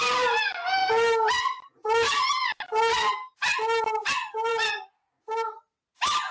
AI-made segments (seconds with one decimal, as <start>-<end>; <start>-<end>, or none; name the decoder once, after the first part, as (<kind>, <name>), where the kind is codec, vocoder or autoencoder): none